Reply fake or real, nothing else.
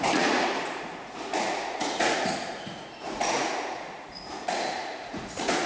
fake